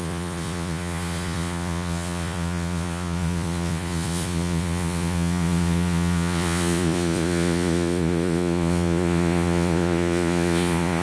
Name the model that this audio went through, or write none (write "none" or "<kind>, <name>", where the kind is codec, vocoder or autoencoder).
vocoder, Vocos